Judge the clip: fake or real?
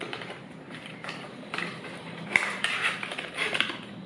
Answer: fake